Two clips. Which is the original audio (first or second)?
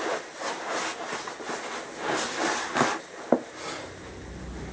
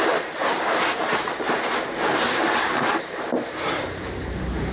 first